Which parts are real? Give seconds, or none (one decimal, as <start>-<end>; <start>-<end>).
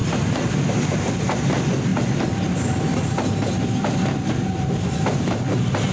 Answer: 0.5-1.9; 4.9-5.9